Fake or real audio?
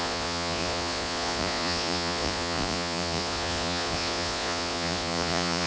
fake